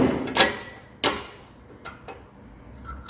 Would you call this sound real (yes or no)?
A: yes